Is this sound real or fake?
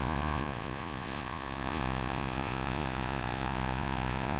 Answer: fake